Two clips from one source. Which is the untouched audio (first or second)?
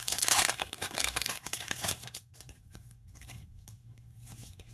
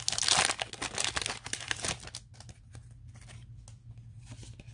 second